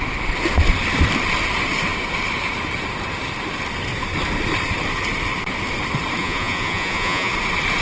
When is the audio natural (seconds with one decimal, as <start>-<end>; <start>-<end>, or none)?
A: 0.0-6.2; 7.3-7.8